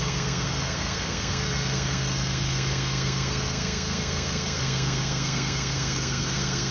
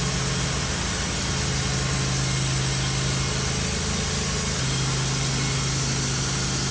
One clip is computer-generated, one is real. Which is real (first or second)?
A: second